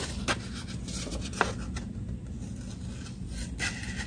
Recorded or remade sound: recorded